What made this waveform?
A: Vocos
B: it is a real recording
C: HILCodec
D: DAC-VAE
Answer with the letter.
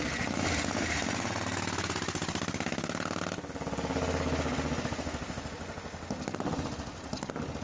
B